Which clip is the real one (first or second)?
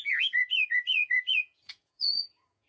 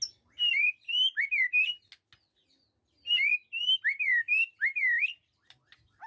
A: second